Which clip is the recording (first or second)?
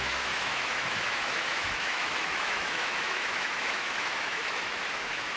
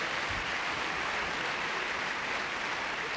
second